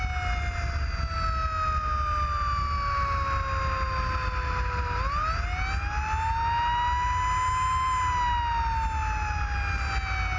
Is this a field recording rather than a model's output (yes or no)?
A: yes